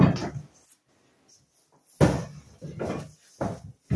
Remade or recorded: recorded